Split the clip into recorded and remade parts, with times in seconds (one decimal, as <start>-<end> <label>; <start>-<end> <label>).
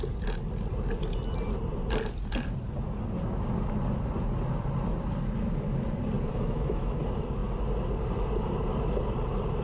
0.0-6.3 recorded; 6.3-7.0 remade; 7.0-9.6 recorded